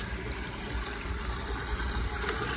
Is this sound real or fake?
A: real